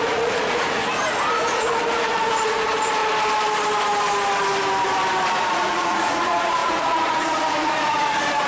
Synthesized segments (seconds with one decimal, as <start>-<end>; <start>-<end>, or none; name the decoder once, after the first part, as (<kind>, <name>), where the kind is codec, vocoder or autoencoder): 0.0-0.8 (vocoder, Vocos); 1.5-3.0; 5.4-8.5